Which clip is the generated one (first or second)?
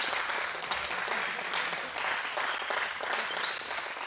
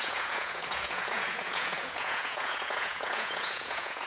second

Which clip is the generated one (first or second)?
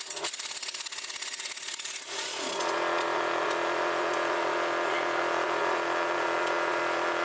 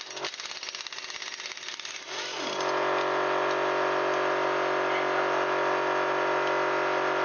first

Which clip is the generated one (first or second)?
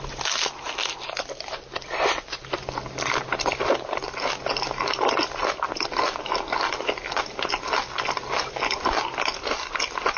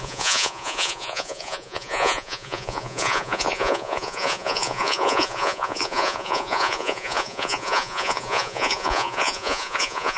second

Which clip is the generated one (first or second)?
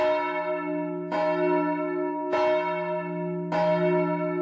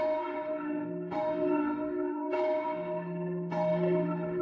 second